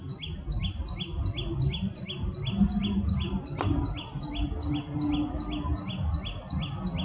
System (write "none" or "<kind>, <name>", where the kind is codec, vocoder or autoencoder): none